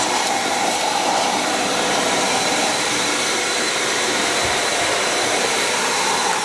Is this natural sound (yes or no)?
no